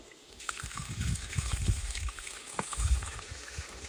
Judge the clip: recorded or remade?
remade